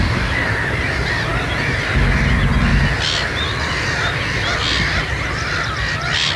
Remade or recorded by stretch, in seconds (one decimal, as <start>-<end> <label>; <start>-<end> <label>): 0.0-6.4 recorded